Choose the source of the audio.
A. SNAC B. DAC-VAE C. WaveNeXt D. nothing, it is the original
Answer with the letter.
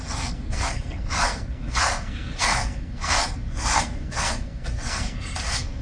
A